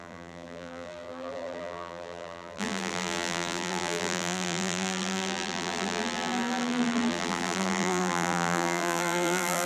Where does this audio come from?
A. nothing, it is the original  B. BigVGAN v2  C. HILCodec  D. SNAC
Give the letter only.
B